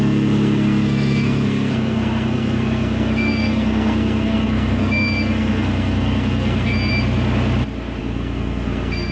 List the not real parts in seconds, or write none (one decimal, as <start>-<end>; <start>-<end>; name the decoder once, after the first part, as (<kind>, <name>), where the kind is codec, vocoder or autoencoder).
0.0-6.9 (codec, SNAC); 8.0-9.1